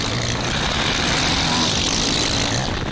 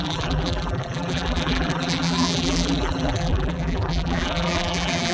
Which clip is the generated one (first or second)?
second